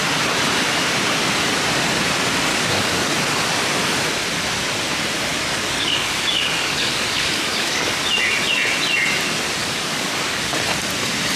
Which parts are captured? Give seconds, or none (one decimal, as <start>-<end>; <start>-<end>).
0.0-2.5; 3.1-5.3; 8.0-9.6; 10.5-11.4